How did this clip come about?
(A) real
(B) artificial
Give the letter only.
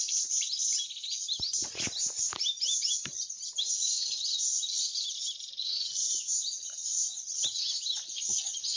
A